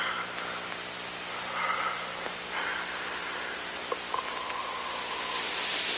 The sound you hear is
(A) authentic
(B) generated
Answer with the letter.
A